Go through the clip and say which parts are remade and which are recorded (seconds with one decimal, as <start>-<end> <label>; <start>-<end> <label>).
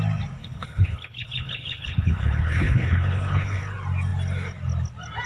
0.0-0.4 recorded; 0.4-3.6 remade; 3.6-5.3 recorded